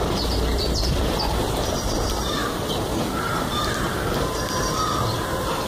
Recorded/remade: remade